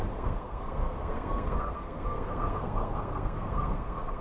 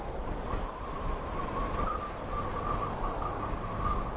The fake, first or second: first